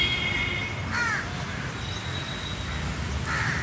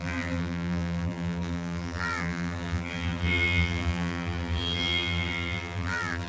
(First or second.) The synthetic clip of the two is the second